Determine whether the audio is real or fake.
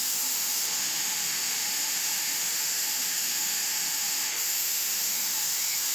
fake